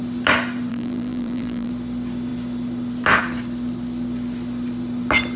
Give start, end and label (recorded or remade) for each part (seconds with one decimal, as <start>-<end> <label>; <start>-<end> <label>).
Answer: 0.0-0.7 recorded; 0.7-1.7 remade; 1.7-5.4 recorded